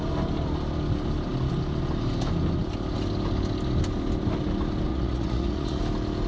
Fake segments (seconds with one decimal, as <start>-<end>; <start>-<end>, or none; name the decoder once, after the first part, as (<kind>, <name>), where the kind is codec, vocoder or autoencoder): 4.9-5.8 (vocoder, Vocos)